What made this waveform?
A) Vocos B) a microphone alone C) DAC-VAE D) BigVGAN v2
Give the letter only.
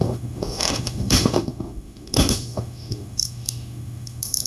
C